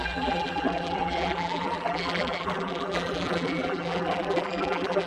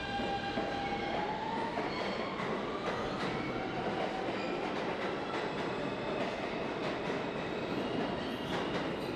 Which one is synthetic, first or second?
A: first